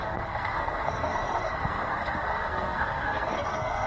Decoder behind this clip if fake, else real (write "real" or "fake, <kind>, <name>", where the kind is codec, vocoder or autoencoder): fake, codec, SNAC